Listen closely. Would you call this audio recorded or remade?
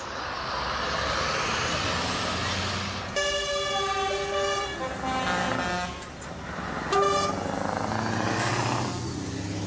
recorded